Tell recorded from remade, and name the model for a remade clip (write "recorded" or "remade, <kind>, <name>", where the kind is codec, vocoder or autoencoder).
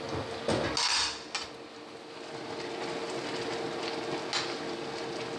recorded